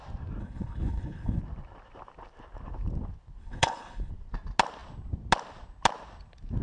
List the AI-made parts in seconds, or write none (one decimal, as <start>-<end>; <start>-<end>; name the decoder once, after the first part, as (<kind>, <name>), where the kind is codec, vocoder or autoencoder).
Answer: 0.4-1.4 (codec, HILCodec); 3.4-4.1